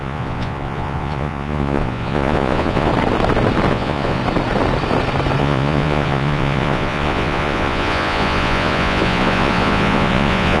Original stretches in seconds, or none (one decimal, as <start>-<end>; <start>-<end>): 2.9-3.7; 4.2-5.4